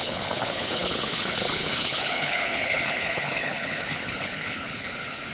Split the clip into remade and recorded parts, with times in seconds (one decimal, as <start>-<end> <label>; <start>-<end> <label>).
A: 0.0-5.3 remade